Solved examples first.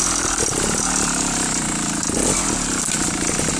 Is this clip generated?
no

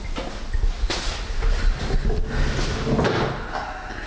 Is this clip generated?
no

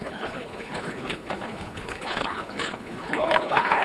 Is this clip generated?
yes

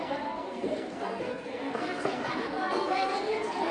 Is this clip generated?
yes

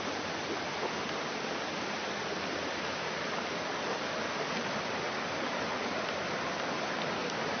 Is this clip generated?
no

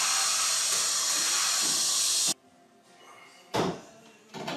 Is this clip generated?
no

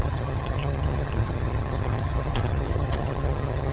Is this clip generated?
yes